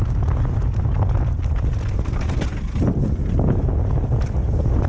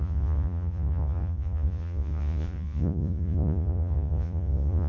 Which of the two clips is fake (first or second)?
second